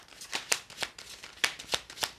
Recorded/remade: recorded